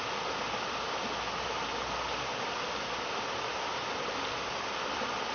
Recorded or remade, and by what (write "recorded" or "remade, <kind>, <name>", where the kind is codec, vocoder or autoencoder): recorded